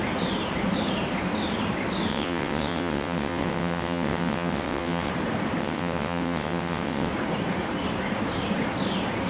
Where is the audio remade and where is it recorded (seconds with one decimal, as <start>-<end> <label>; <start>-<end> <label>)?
0.0-2.1 recorded; 2.1-5.1 remade; 5.1-5.6 recorded; 5.6-7.1 remade; 7.1-9.3 recorded